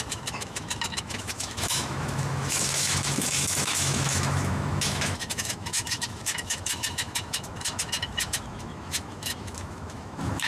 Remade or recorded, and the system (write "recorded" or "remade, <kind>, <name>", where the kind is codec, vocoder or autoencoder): remade, autoencoder, DAC-VAE